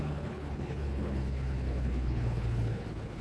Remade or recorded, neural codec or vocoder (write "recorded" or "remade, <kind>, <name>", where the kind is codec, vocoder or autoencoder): remade, codec, HILCodec